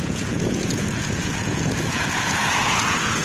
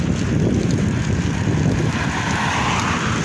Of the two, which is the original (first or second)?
second